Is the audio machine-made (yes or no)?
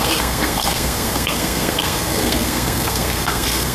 yes